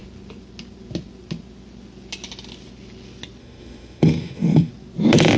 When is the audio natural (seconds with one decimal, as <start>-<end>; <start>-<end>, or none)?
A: 0.0-3.4; 4.7-5.4